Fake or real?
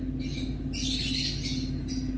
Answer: real